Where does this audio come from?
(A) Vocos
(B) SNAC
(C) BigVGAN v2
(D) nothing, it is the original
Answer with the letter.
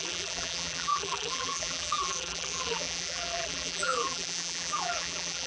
C